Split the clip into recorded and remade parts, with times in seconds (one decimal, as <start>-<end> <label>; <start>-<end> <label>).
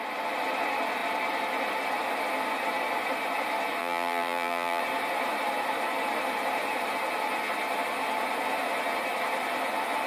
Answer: 0.0-3.8 recorded; 3.8-4.8 remade; 4.8-10.1 recorded